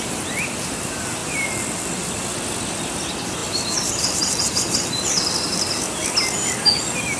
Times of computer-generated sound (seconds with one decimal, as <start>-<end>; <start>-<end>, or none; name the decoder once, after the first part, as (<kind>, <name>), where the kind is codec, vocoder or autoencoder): 1.2-2.6 (vocoder, BigVGAN v2); 3.4-6.1